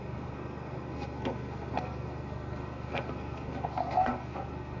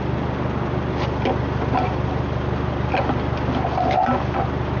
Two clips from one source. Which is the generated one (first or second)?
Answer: first